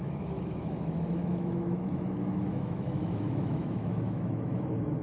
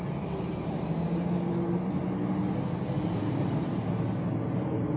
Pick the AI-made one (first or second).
first